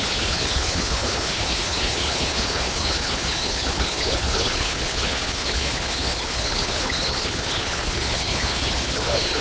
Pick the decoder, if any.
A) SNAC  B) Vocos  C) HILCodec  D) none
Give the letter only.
C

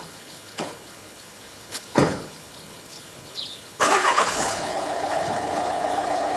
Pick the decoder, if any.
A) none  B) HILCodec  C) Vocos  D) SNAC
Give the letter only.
B